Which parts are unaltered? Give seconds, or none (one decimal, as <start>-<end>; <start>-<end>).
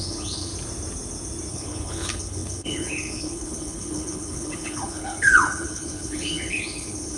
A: 0.5-1.5